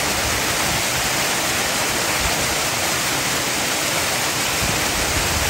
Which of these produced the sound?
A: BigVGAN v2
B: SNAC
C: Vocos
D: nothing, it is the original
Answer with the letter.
D